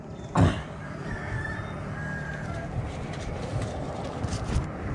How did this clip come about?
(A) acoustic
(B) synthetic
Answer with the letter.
B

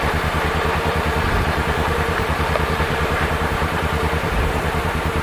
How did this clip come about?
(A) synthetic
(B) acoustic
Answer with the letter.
A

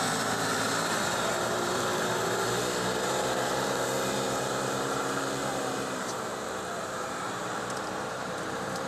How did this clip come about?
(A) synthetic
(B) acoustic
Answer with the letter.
A